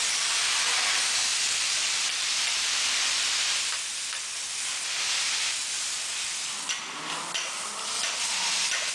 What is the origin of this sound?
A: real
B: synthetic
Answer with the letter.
A